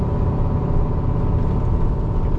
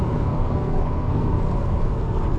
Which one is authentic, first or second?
first